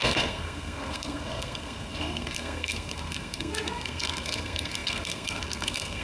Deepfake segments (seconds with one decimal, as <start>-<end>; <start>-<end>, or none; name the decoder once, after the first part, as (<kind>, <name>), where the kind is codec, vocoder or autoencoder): 0.0-6.0 (codec, SNAC)